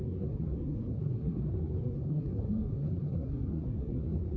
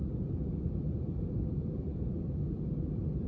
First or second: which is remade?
first